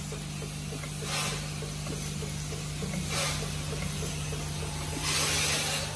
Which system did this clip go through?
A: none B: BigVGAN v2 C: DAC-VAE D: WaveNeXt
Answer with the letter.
A